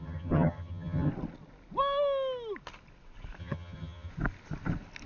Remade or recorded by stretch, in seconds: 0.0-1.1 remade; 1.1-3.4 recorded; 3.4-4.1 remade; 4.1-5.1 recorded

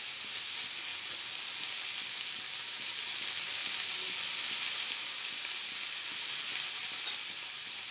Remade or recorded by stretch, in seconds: 0.0-7.9 recorded

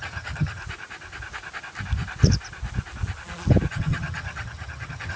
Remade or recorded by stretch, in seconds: 0.0-0.6 remade; 0.6-3.7 recorded; 3.7-5.2 remade

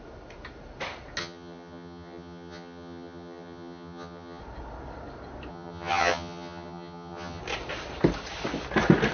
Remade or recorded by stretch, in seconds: 0.0-1.2 recorded; 1.2-4.4 remade; 4.4-5.5 recorded; 5.5-7.4 remade; 7.4-9.1 recorded

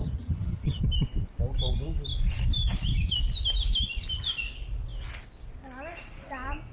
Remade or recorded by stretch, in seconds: 0.0-0.8 remade; 0.8-6.7 recorded